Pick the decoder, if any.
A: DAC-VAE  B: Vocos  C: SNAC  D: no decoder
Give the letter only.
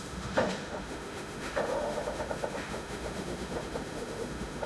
A